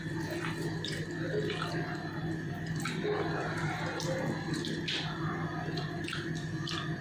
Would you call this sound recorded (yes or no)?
yes